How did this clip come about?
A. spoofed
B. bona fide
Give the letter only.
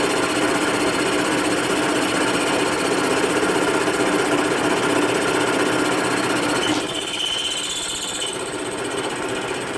B